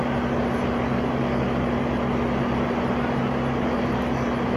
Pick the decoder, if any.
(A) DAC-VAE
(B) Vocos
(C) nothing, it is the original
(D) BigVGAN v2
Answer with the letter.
C